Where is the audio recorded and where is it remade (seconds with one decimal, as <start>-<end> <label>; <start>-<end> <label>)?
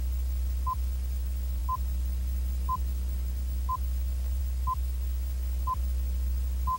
0.0-6.8 recorded